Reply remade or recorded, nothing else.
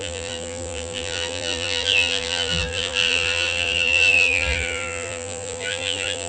remade